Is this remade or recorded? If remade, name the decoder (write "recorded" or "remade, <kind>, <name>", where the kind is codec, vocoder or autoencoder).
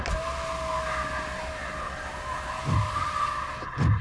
recorded